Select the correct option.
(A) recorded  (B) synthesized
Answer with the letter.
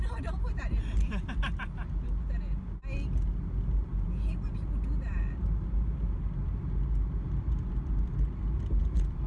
A